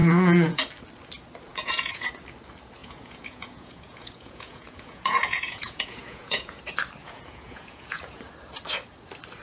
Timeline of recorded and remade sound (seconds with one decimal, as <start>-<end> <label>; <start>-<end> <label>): 0.0-0.6 remade; 0.6-1.5 recorded; 1.5-2.1 remade; 2.1-2.8 recorded; 2.8-6.6 remade; 6.6-7.0 recorded; 7.0-8.2 remade; 8.2-9.4 recorded